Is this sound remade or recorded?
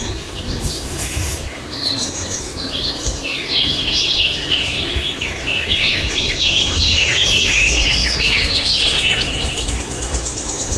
remade